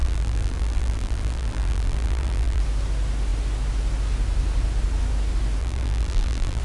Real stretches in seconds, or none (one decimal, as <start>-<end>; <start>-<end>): 2.6-5.6